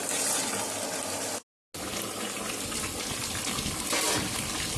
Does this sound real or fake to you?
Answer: real